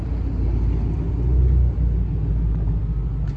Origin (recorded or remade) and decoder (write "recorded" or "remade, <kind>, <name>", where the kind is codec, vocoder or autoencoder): recorded